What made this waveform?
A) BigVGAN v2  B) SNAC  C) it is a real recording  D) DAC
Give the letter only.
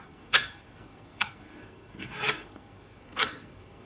B